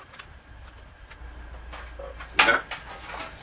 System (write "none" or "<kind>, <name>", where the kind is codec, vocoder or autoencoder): none